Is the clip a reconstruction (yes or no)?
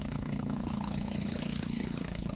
yes